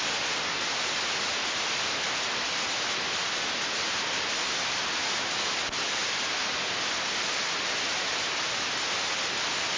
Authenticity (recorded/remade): recorded